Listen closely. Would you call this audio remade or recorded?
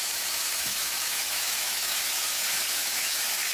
remade